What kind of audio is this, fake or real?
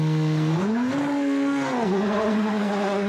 fake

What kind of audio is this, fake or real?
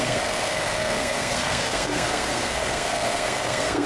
fake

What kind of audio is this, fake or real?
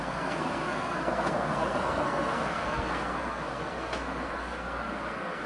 fake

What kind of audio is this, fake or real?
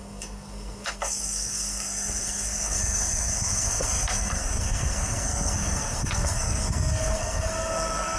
fake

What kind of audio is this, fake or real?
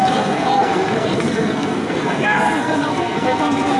fake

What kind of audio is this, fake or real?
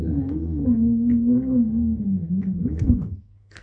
fake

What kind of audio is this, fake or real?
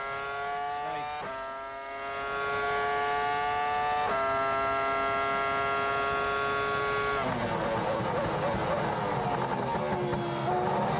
real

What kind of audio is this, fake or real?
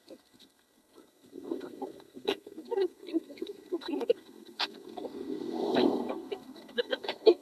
fake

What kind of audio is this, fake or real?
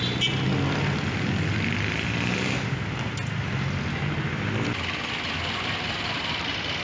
real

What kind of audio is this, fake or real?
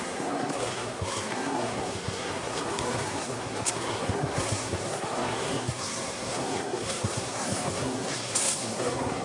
fake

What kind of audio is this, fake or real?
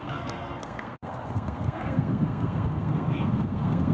fake